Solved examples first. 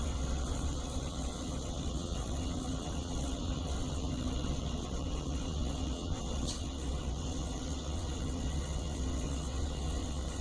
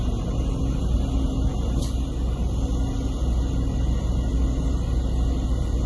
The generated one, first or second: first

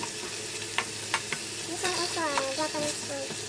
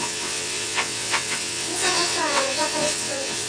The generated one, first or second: second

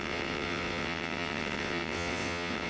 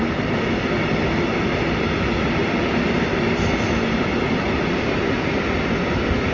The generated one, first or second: first